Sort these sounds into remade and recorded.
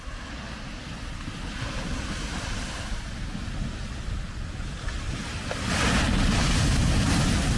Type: recorded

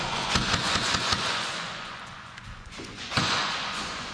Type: remade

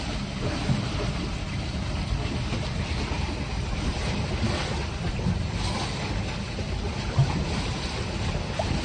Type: recorded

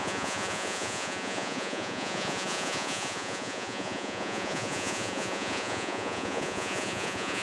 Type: remade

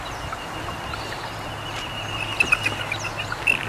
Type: recorded